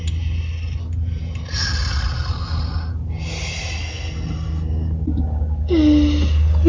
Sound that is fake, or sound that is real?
real